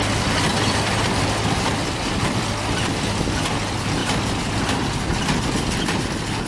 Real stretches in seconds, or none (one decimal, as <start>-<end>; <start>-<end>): 0.0-6.5